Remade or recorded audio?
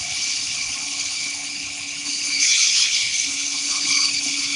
remade